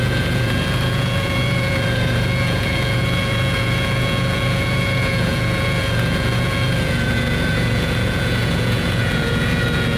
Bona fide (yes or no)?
no